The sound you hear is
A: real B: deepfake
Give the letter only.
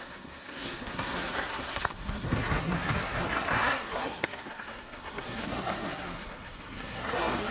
B